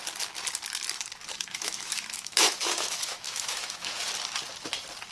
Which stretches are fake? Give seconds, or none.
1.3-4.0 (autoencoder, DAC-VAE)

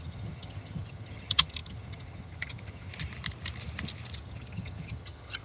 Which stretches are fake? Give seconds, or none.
0.0-2.9 (vocoder, HiFi-GAN); 4.2-5.4

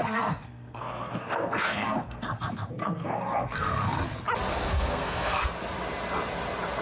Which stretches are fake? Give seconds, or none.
0.0-4.0 (codec, SNAC); 4.5-5.4

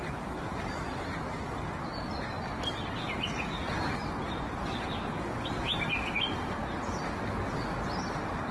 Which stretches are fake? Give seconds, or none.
none